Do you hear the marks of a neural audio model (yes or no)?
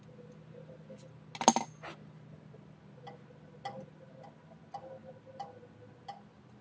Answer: no